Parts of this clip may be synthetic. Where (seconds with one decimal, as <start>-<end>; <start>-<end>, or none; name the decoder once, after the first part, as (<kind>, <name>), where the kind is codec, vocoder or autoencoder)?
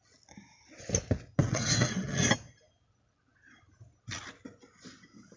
1.4-2.2 (vocoder, WaveNeXt)